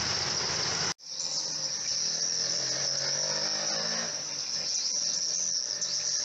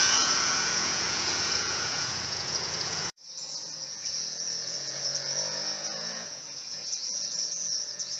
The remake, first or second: second